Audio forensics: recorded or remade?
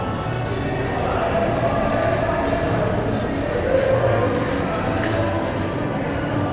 recorded